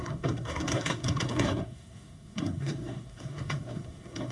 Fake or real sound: fake